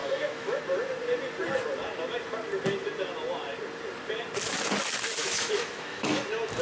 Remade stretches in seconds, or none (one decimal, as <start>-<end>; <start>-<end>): 0.0-0.6; 5.2-6.1